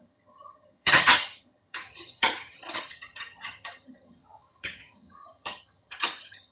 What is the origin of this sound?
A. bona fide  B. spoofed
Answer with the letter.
B